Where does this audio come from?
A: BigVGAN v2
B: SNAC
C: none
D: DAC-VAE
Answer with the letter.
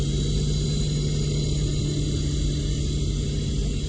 C